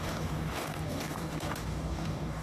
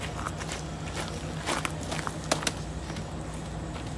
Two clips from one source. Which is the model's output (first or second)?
first